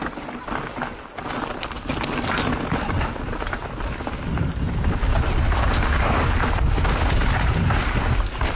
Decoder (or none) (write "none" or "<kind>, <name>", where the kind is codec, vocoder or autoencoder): none